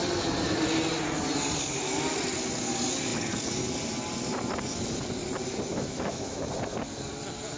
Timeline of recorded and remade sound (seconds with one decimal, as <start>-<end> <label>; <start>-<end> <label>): 0.0-5.7 recorded; 5.7-6.4 remade; 6.4-7.6 recorded